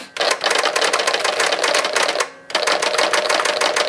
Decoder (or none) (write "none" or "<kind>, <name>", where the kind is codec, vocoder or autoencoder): none